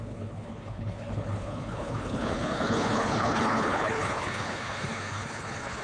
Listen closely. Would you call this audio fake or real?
fake